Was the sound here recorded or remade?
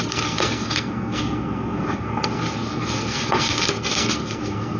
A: remade